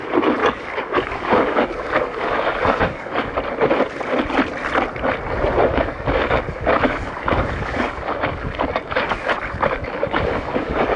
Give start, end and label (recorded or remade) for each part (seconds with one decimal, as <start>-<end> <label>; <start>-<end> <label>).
0.0-0.4 recorded; 0.4-3.3 remade; 3.3-5.6 recorded; 5.6-11.0 remade